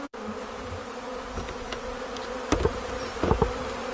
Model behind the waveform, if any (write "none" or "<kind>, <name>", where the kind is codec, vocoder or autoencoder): none